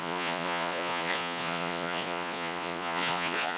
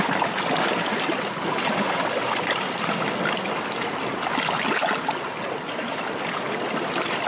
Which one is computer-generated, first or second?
first